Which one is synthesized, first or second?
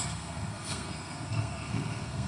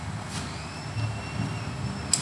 first